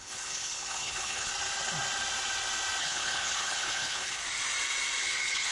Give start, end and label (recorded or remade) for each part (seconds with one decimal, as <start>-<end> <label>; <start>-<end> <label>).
0.0-1.3 remade; 1.3-2.8 recorded; 2.8-4.2 remade; 4.2-5.0 recorded; 5.0-5.5 remade